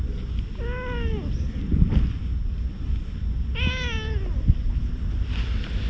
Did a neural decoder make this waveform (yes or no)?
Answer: no